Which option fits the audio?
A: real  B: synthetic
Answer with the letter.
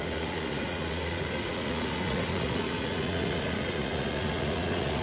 B